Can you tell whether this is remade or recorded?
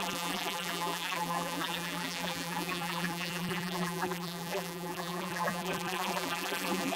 remade